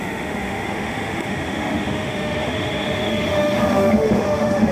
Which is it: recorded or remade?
remade